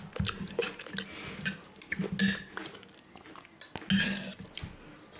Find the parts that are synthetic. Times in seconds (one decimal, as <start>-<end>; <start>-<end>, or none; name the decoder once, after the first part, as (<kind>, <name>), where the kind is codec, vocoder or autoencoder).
none